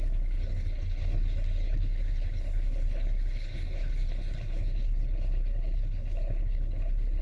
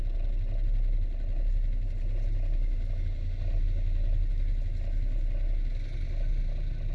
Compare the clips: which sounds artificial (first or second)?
first